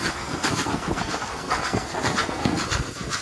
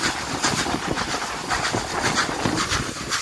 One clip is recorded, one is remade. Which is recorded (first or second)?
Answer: second